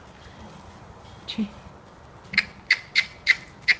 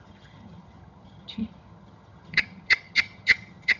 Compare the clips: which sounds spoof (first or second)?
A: second